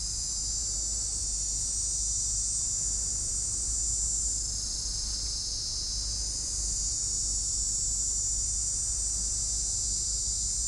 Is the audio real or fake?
real